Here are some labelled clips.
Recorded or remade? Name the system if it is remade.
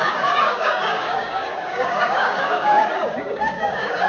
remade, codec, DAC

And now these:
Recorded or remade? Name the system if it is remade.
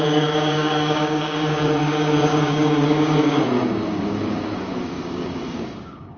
remade, codec, DAC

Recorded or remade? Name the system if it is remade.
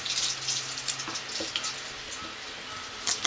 recorded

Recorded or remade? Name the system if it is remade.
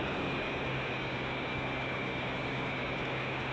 remade, codec, DAC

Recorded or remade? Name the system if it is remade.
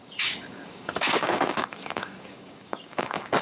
remade, codec, DAC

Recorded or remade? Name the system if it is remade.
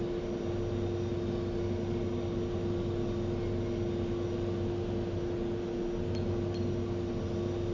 recorded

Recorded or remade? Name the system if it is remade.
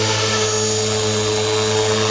recorded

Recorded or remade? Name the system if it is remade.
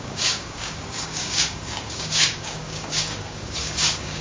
remade, codec, DAC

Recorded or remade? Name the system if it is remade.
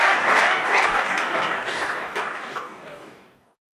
remade, codec, DAC